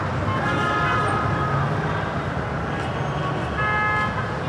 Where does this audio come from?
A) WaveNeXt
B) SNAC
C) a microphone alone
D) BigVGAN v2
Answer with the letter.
C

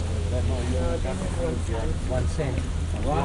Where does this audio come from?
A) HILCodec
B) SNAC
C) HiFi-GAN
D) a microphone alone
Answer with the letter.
D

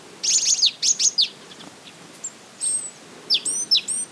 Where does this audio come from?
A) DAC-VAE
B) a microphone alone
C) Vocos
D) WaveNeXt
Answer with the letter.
B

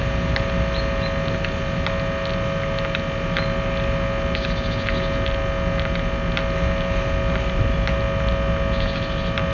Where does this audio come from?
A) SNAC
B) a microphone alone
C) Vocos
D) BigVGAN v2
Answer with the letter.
B